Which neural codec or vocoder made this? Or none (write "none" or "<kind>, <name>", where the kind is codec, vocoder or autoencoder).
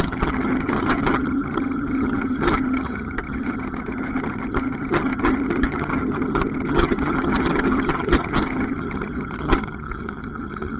vocoder, HiFi-GAN